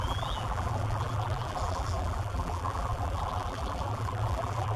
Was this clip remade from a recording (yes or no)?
yes